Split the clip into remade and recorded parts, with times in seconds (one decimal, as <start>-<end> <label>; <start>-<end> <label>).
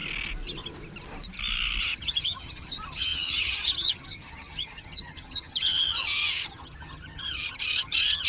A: 0.0-1.8 recorded; 1.8-8.3 remade